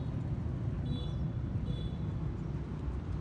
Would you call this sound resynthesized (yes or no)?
no